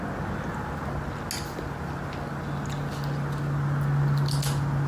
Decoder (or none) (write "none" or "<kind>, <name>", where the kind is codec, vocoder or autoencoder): none